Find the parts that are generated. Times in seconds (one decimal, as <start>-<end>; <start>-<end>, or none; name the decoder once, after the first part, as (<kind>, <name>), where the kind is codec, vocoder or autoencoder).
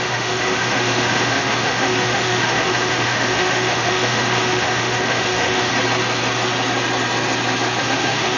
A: 0.0-5.7 (autoencoder, DAC-VAE); 7.8-8.4